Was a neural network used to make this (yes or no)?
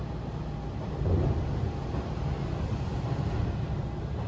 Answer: no